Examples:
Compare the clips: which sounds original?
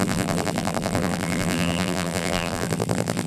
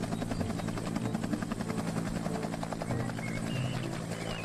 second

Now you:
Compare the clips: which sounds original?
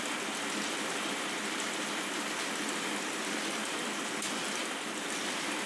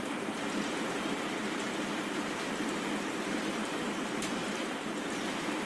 first